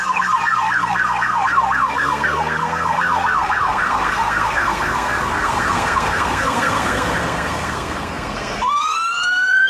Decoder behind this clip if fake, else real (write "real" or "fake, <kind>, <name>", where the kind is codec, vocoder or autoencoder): fake, codec, SNAC